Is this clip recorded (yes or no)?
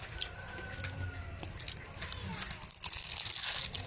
yes